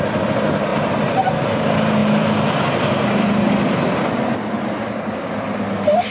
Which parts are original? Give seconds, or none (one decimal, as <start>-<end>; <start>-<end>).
0.0-0.7; 1.3-6.1